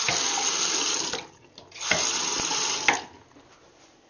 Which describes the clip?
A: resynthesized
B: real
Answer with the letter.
B